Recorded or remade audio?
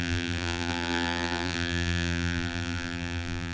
remade